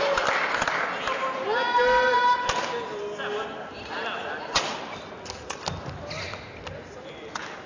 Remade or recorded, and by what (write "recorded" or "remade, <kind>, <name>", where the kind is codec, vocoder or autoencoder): recorded